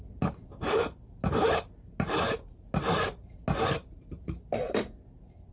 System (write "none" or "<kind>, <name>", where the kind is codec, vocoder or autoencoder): none